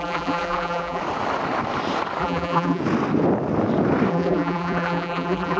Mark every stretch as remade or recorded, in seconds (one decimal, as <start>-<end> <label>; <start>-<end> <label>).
0.0-1.0 remade; 1.0-2.2 recorded; 2.2-2.8 remade; 2.8-4.1 recorded; 4.1-5.6 remade